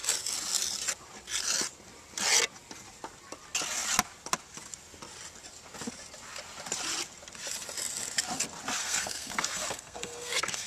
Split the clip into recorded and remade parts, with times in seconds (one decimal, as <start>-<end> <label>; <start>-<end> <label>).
0.0-8.8 recorded; 8.8-10.7 remade